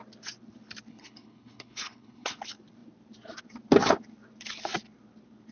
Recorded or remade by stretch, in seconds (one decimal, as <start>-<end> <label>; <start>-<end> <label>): 0.0-0.9 recorded; 0.9-2.4 remade; 2.4-5.5 recorded